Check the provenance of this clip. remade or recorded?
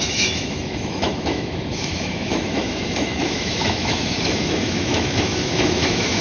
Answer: remade